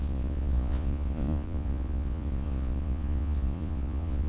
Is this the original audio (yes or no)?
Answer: no